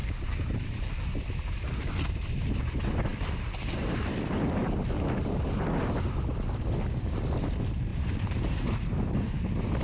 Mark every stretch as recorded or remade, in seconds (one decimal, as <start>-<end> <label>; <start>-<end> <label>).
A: 0.0-7.9 recorded; 7.9-9.3 remade; 9.3-9.8 recorded